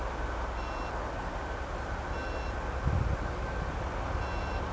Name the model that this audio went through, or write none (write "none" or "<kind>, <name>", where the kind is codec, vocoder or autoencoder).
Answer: none